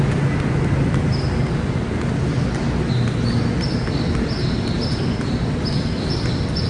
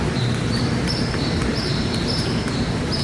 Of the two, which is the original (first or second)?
first